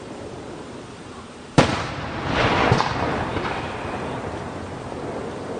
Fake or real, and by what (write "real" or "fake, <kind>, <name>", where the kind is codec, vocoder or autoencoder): fake, vocoder, BigVGAN v2